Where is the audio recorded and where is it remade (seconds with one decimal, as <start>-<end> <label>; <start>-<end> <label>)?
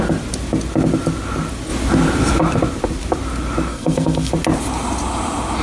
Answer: 0.0-3.7 recorded; 3.7-4.3 remade; 4.3-5.6 recorded